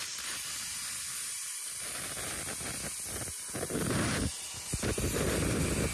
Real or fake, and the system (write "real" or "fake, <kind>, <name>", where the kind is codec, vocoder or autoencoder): real